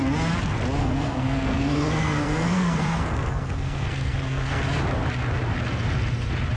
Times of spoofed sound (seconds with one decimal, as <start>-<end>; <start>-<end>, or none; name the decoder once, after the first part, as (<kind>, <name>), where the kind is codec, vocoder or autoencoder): 0.8-4.6 (codec, SNAC)